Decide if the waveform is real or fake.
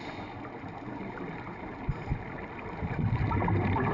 real